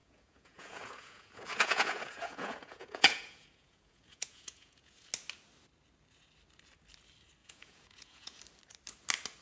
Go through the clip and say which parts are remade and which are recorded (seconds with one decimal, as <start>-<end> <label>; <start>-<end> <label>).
0.0-5.1 remade; 5.1-7.4 recorded; 7.4-8.4 remade; 8.4-9.4 recorded